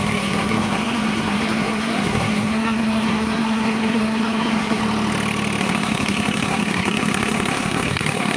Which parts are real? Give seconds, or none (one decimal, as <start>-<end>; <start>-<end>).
4.8-5.6